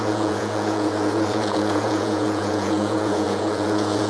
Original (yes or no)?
no